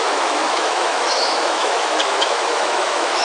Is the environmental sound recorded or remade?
remade